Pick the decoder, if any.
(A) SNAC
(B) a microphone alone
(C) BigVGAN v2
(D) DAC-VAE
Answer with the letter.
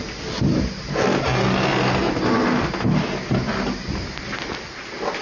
B